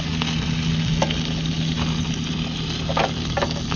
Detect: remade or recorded recorded